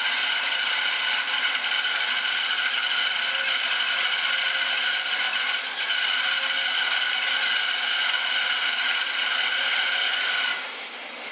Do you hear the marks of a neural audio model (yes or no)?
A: no